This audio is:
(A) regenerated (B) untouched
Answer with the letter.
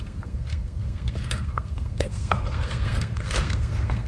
A